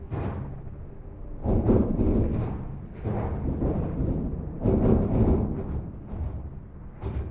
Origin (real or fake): real